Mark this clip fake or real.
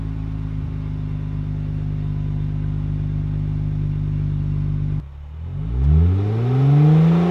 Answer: real